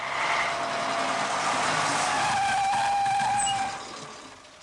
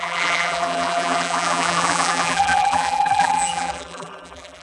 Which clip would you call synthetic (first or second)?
second